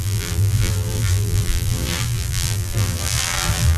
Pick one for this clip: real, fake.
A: fake